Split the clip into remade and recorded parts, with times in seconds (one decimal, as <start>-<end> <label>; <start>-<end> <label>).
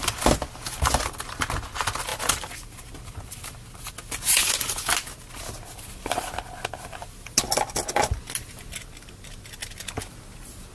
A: 0.0-10.7 recorded